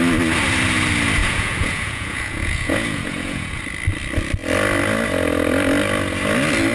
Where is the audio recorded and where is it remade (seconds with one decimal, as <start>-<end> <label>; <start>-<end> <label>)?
0.0-1.2 recorded; 1.2-3.6 remade; 3.6-6.7 recorded